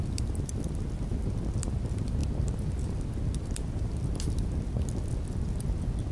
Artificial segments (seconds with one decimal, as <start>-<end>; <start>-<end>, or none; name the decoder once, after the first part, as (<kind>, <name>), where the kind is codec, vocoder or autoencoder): none